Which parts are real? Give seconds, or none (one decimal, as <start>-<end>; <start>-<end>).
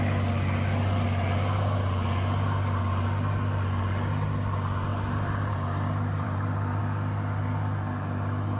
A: 0.0-4.9; 6.8-8.6